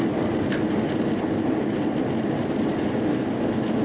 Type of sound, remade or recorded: recorded